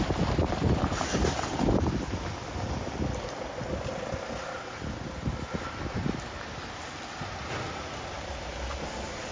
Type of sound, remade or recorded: recorded